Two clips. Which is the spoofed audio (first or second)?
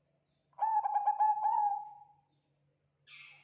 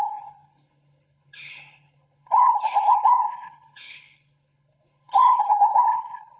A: second